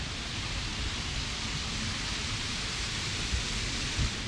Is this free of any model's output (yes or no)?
yes